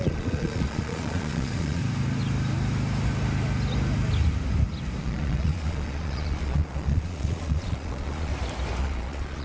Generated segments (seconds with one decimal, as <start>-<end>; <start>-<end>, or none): 0.0-1.8; 5.0-8.3; 8.8-9.4